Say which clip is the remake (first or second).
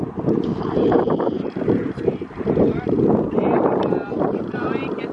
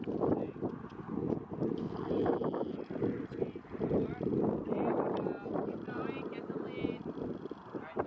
first